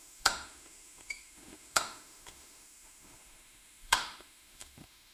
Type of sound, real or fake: fake